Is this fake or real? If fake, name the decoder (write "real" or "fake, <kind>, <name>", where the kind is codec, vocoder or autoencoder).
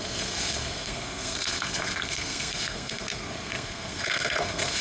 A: fake, codec, SNAC